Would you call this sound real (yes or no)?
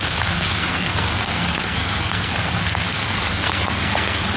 no